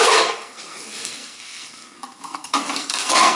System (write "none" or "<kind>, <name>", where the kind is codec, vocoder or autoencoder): codec, SNAC